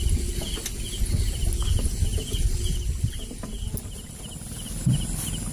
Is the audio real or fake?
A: real